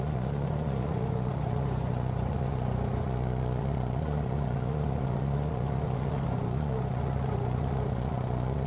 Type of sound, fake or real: fake